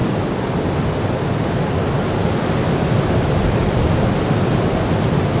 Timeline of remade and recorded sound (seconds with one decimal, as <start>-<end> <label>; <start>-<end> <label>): 0.0-5.4 recorded